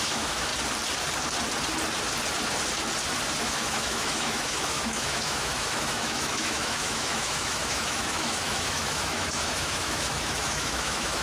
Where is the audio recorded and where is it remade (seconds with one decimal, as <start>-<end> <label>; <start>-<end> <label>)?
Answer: 0.0-0.5 remade; 0.5-3.4 recorded; 3.4-11.2 remade